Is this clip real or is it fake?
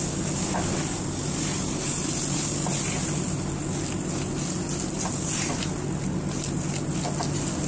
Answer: real